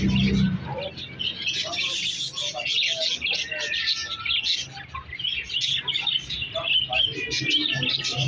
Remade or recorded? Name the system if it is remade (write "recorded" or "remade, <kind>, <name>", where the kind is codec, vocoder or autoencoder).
recorded